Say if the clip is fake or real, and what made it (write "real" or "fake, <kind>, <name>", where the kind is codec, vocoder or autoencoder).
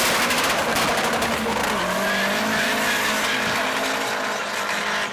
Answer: real